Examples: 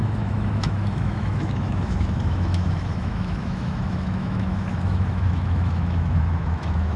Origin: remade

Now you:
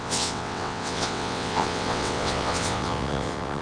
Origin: remade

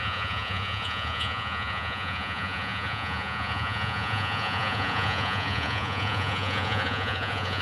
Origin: remade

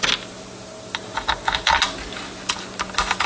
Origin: recorded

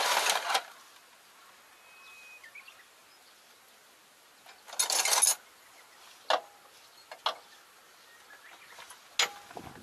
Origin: recorded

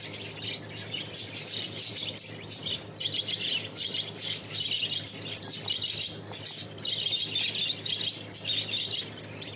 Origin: recorded